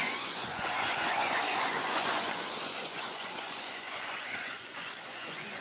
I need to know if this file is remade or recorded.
remade